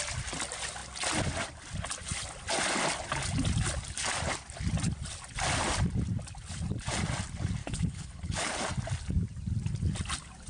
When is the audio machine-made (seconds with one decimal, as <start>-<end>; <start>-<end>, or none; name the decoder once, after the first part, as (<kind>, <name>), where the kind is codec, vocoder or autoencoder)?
7.6-8.5 (codec, HILCodec)

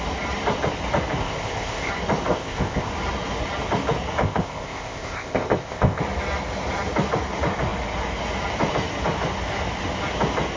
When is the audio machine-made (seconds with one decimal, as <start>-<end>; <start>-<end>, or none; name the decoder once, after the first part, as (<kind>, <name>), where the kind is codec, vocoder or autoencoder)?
1.2-1.9 (codec, ZipCodec); 2.3-2.9; 4.2-6.0

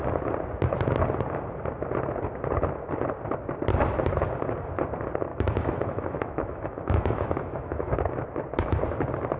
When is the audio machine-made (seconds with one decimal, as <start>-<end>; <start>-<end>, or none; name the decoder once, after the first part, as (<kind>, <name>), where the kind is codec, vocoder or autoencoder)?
5.3-8.0 (autoencoder, DAC-VAE)